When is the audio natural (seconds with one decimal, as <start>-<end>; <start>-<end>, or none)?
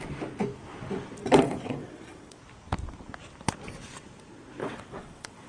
0.0-1.2; 2.4-4.6